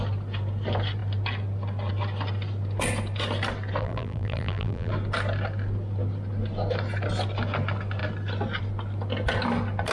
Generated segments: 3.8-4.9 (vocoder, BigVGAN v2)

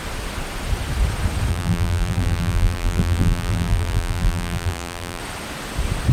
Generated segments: 1.5-5.2 (vocoder, BigVGAN v2)

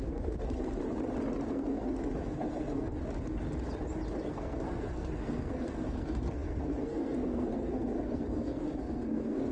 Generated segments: 0.0-0.8 (codec, SNAC); 1.5-2.9; 4.3-9.5

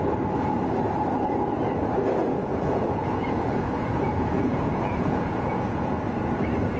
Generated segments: 2.2-6.0 (vocoder, Vocos)

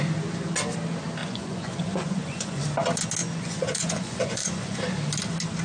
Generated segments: 1.2-2.6 (vocoder, Vocos); 3.2-4.8

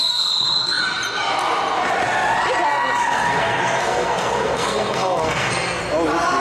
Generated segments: 0.0-0.8 (codec, SNAC); 2.7-5.8